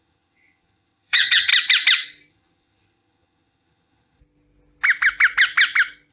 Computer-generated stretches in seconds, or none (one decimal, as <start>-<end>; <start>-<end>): 0.0-1.5; 2.3-4.2